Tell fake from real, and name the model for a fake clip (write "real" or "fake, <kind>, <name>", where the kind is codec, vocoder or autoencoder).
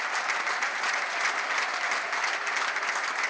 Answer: real